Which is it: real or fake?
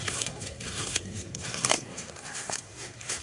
fake